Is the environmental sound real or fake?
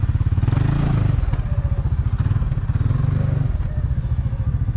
real